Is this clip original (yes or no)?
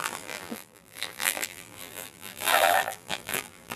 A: no